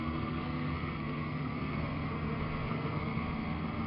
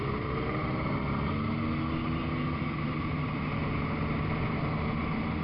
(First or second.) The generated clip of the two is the first